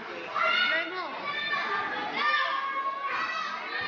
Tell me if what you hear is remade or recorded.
recorded